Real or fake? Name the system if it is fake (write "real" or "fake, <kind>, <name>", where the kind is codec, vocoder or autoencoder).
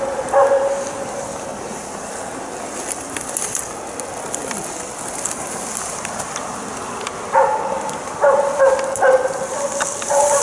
real